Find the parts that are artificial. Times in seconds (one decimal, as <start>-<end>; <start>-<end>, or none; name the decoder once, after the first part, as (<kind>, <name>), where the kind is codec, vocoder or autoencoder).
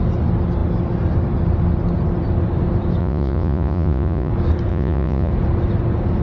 3.0-4.3 (vocoder, Vocos); 4.7-5.3